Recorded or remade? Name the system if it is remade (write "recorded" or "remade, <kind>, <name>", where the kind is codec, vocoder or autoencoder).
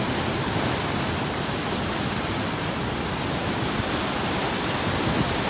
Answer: remade, vocoder, BigVGAN v2